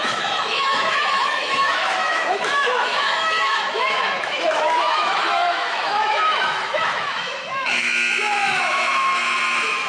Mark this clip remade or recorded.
remade